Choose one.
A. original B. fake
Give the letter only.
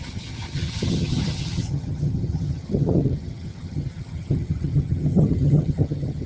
B